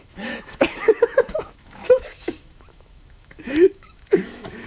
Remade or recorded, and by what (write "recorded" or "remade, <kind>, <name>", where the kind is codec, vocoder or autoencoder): remade, autoencoder, DAC-VAE